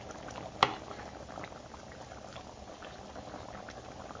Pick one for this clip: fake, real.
real